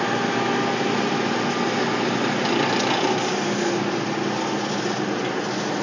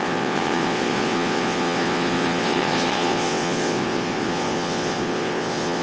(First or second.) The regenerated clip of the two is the second